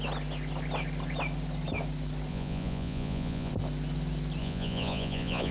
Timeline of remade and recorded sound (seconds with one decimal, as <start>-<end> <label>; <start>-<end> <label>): 0.0-2.3 recorded; 2.3-3.5 remade; 3.5-4.4 recorded; 4.4-5.5 remade